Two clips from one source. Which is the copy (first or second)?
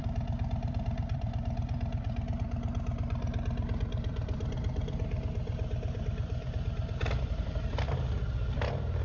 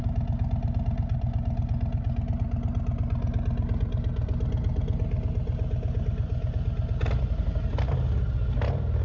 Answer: first